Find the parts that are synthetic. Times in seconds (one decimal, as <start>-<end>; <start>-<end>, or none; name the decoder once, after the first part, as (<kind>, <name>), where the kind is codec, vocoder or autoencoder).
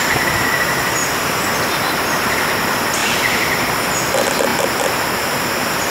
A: 1.0-1.6 (vocoder, BigVGAN v2)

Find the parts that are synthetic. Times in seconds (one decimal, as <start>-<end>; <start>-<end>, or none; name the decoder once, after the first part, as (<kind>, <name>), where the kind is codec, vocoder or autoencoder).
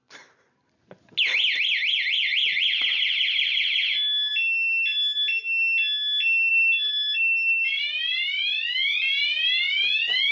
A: 6.5-7.8 (autoencoder, DAC-VAE)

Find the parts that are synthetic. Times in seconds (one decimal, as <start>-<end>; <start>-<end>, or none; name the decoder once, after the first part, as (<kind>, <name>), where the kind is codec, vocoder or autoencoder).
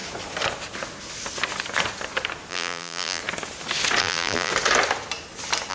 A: 2.5-3.2 (vocoder, BigVGAN v2); 4.0-4.5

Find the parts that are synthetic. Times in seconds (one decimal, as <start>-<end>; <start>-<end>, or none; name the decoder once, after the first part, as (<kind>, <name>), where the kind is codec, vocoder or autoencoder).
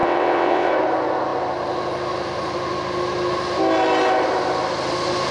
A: 0.0-0.7 (vocoder, WaveNeXt)